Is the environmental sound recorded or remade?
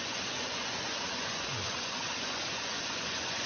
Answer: remade